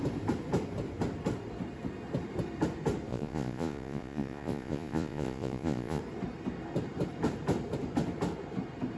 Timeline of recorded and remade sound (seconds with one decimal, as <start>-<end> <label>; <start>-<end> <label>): 0.0-3.1 recorded; 3.1-6.0 remade; 6.0-9.0 recorded

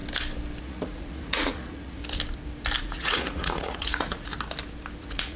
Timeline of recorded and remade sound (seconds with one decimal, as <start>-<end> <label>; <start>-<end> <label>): 0.0-0.6 recorded; 0.6-2.0 remade; 2.0-2.8 recorded; 2.8-4.3 remade; 4.3-5.0 recorded; 5.0-5.4 remade